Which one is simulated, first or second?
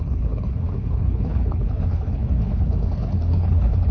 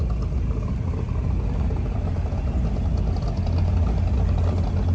first